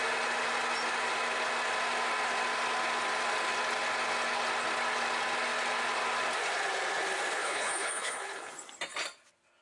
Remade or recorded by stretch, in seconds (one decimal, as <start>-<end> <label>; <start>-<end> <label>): 0.0-7.4 recorded; 7.4-8.5 remade; 8.5-9.6 recorded